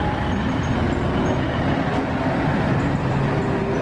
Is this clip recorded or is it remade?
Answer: recorded